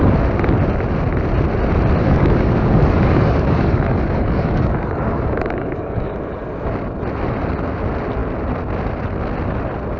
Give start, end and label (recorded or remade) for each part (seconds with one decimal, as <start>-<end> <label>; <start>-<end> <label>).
0.0-2.0 recorded; 2.0-6.1 remade; 6.1-10.0 recorded